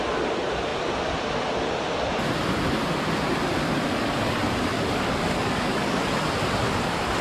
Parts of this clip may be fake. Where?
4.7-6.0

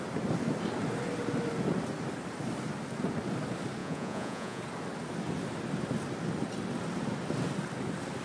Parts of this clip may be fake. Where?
3.8-4.6

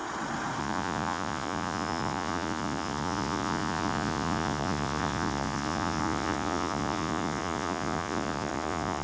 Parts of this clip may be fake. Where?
0.6-9.0